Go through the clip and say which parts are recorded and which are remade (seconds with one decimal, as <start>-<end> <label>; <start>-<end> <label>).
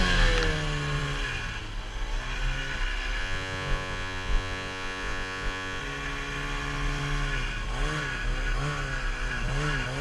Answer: 0.0-3.2 recorded; 3.2-5.8 remade; 5.8-10.0 recorded